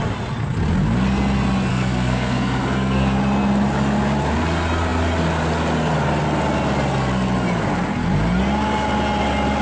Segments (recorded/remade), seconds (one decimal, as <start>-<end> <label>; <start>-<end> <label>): 0.0-1.7 recorded; 1.7-3.2 remade; 3.2-9.6 recorded

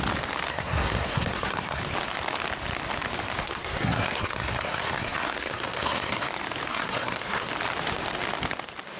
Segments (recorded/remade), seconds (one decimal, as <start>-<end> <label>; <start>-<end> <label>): 0.0-0.5 recorded; 0.5-1.8 remade; 1.8-3.4 recorded; 3.4-6.3 remade; 6.3-6.7 recorded; 6.7-7.5 remade; 7.5-9.0 recorded